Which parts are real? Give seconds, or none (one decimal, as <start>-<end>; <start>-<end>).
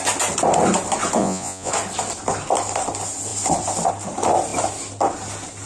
0.0-1.2; 1.7-5.7